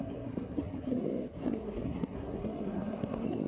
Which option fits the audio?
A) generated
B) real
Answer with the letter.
A